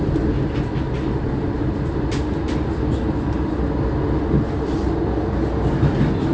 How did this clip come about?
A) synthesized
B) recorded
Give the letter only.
B